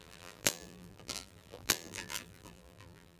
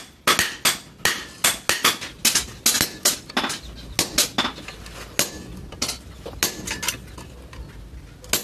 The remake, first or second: first